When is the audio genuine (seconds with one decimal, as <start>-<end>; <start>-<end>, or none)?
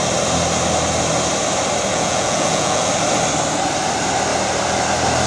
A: 0.0-1.9; 2.9-5.3